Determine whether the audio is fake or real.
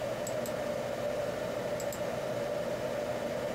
real